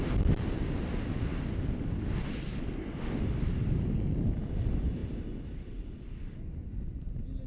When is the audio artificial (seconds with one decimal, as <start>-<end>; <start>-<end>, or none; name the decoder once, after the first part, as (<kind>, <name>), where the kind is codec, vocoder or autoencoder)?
none